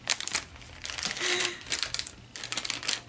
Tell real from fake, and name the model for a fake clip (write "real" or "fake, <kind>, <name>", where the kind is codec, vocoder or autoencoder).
real